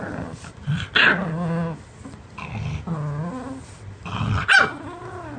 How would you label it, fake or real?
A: real